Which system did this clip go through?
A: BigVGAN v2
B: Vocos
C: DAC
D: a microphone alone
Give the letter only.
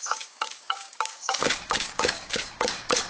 C